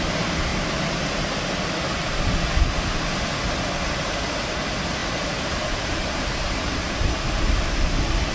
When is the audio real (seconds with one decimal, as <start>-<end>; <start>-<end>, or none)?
0.0-5.0; 7.1-8.3